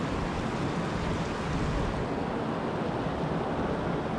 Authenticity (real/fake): real